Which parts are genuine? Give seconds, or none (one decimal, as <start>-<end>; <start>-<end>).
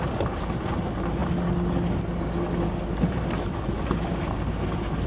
0.0-5.1